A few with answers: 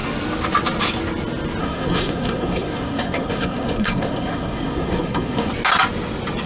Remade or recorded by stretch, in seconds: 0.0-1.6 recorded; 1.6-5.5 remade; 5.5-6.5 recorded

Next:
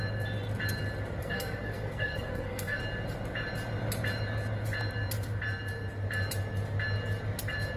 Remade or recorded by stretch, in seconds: 0.0-1.2 recorded; 1.2-2.8 remade; 2.8-7.8 recorded

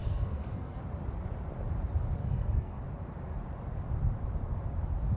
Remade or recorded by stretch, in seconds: 0.0-0.8 remade; 0.8-2.2 recorded; 2.2-2.8 remade; 2.8-5.2 recorded

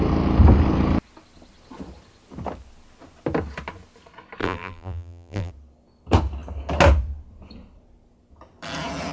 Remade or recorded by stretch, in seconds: 0.0-4.4 recorded; 4.4-5.5 remade; 5.5-9.1 recorded